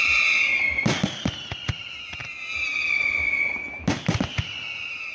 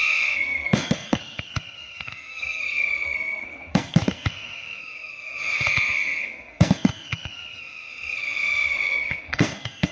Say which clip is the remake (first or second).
second